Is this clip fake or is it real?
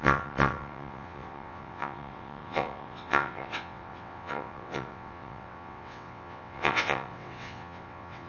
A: fake